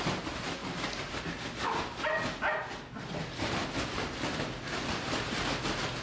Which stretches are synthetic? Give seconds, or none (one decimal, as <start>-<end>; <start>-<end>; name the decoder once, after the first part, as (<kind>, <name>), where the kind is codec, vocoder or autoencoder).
none